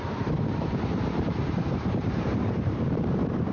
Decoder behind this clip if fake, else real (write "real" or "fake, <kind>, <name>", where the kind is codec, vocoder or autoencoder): fake, vocoder, BigVGAN v2